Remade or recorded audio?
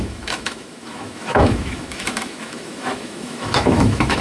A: remade